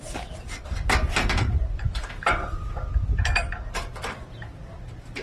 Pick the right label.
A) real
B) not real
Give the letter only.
B